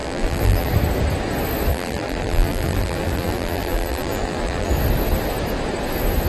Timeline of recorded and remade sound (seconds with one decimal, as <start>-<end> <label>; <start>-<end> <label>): 0.0-0.7 remade; 0.7-1.7 recorded; 1.7-4.7 remade; 4.7-6.3 recorded